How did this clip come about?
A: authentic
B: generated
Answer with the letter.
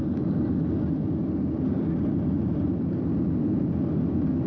A